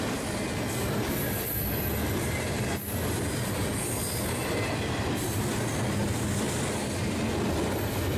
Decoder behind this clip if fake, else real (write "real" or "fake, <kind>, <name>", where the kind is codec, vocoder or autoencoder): real